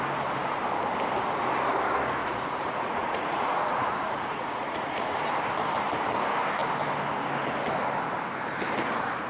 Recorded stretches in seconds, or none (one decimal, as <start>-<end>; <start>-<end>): 0.0-2.2; 5.1-9.3